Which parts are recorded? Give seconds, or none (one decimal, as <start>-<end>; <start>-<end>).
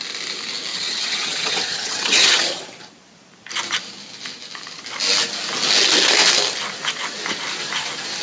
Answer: 0.0-0.7; 2.6-8.2